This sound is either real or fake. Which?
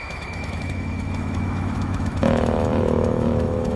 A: fake